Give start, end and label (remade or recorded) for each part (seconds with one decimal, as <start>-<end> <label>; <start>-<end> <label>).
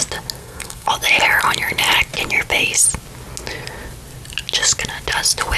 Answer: 0.0-0.4 recorded; 0.4-0.9 remade; 0.9-5.6 recorded